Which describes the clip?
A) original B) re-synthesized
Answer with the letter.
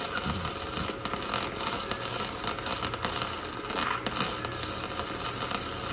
A